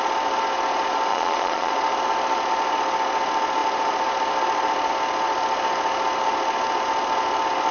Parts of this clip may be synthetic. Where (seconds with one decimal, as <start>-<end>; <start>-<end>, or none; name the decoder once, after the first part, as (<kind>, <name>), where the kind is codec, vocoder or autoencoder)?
1.1-1.7 (vocoder, Vocos)